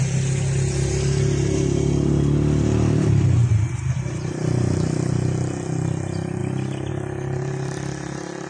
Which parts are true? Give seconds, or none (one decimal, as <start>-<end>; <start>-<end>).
0.0-8.5